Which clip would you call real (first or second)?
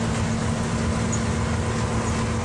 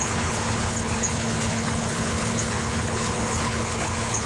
first